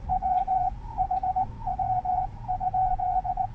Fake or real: fake